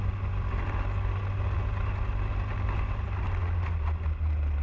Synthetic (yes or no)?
no